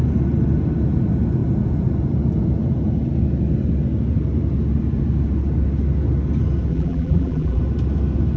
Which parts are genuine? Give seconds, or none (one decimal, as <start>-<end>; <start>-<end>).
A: 0.0-6.7; 7.6-8.4